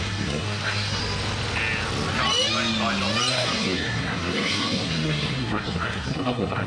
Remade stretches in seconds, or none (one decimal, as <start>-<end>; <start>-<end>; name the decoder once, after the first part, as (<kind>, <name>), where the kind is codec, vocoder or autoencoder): 0.0-1.0 (codec, SNAC); 3.3-6.7